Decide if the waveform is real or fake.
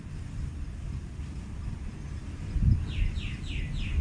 real